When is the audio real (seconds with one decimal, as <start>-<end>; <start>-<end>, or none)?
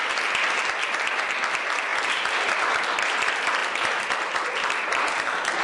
0.0-5.6